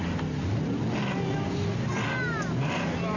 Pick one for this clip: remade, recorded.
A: recorded